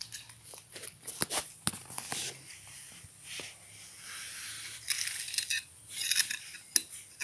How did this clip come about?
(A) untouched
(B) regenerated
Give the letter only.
A